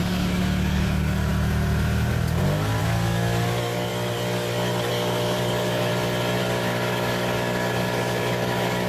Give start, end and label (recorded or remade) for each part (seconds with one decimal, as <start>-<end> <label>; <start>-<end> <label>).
0.0-1.3 remade; 1.3-2.8 recorded; 2.8-3.9 remade; 3.9-4.9 recorded; 4.9-5.9 remade; 5.9-6.4 recorded; 6.4-8.9 remade